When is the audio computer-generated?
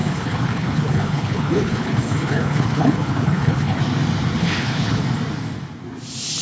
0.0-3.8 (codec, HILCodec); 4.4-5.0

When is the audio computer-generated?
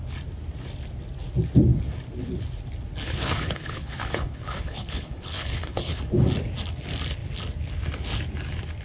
3.0-6.0 (codec, HILCodec)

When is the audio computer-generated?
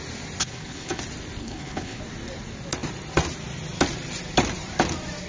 0.4-1.0 (codec, HILCodec); 1.4-2.0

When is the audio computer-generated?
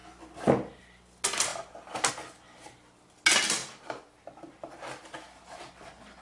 none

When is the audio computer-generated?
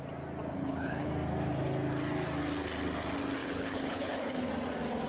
0.5-1.1 (codec, HILCodec); 3.4-4.5